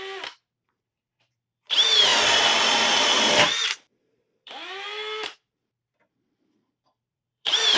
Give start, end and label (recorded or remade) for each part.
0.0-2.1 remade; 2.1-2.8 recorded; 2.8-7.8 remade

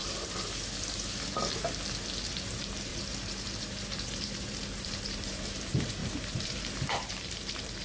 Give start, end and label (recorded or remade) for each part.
0.0-2.3 recorded; 2.3-7.8 remade